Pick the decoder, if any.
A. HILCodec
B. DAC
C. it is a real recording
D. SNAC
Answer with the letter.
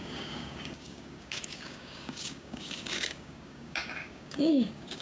B